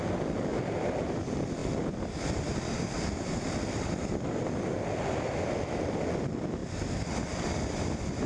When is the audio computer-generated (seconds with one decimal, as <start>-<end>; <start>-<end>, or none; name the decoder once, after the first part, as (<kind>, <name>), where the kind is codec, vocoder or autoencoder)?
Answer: 0.5-1.2 (vocoder, BigVGAN v2); 1.6-5.2; 6.6-7.9

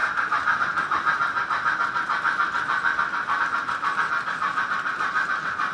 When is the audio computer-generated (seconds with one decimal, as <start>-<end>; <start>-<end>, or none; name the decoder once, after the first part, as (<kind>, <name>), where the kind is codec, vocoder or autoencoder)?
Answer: none

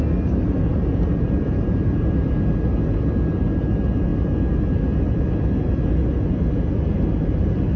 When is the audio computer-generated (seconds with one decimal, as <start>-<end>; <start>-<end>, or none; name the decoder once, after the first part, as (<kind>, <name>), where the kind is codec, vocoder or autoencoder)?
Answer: 0.7-2.3 (vocoder, BigVGAN v2)

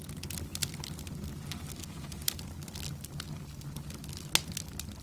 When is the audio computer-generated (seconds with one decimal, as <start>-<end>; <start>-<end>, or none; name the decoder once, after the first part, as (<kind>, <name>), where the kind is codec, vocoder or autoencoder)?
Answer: none

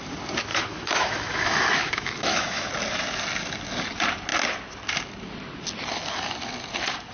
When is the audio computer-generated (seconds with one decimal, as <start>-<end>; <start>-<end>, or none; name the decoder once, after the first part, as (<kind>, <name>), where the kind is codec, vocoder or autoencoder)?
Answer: 0.5-2.7 (autoencoder, DAC-VAE)

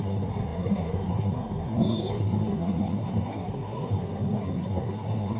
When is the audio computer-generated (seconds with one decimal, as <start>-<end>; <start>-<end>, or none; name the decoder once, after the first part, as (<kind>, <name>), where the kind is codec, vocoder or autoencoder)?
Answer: 0.0-5.4 (codec, SNAC)

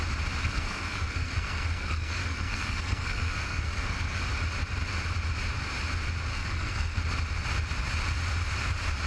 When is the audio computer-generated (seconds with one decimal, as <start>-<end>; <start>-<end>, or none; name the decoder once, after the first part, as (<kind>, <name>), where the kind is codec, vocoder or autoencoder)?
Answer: 0.4-4.2 (codec, SNAC); 6.3-7.0